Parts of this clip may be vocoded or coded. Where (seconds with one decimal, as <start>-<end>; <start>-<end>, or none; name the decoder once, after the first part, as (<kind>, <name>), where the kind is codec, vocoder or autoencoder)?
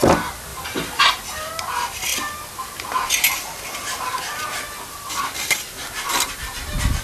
0.5-1.1 (vocoder, BigVGAN v2)